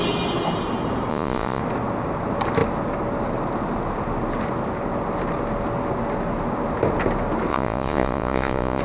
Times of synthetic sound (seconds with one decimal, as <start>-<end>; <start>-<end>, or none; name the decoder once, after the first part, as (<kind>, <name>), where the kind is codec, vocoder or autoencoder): 1.1-1.6 (vocoder, Vocos); 7.5-8.8